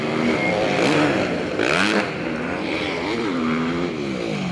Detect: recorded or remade recorded